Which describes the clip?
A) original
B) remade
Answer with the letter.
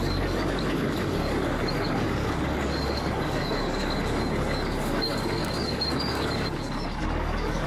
B